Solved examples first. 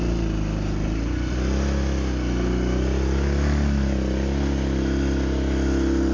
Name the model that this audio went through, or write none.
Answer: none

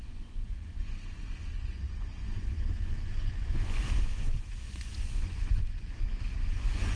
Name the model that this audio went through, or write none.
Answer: vocoder, Vocos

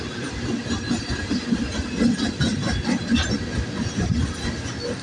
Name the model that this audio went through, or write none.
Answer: none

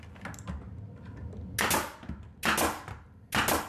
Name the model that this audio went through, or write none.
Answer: none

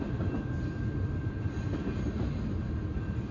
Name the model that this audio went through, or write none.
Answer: none